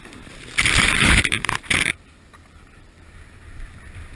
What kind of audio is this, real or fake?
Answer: fake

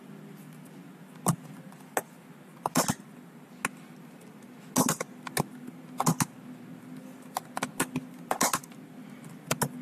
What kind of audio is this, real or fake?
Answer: real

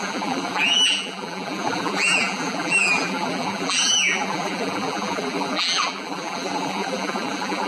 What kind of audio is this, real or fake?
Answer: fake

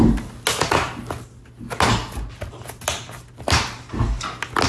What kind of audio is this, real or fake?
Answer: real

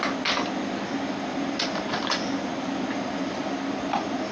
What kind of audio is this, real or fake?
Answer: real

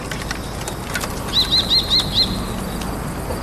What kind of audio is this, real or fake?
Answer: real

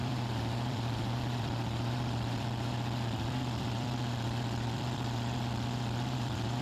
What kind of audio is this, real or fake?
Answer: fake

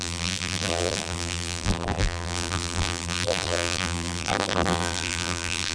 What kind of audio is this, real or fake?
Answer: fake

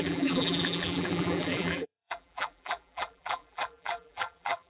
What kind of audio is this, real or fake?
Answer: fake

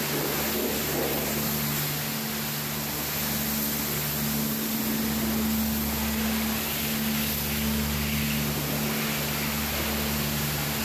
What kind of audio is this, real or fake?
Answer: real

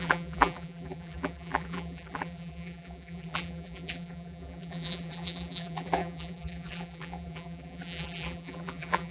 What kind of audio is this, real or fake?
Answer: fake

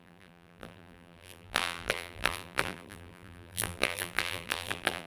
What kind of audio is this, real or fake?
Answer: fake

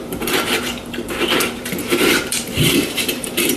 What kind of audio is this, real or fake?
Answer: fake